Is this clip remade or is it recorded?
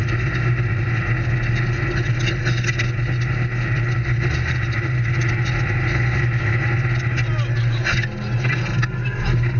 recorded